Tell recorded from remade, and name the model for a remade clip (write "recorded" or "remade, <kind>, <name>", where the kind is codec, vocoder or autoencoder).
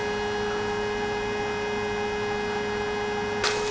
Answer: recorded